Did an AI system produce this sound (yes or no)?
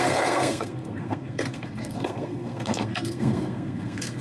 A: yes